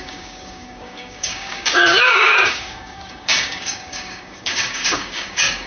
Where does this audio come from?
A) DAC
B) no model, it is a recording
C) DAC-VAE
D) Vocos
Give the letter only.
A